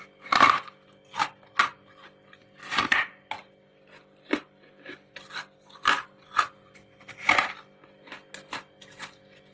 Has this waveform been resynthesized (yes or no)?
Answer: no